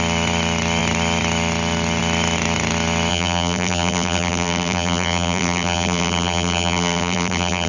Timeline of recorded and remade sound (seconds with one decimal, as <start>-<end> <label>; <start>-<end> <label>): 0.0-3.1 recorded; 3.1-7.7 remade